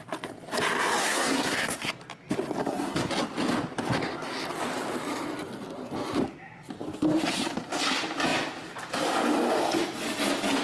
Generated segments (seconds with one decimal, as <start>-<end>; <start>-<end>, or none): 1.0-1.9; 2.6-3.1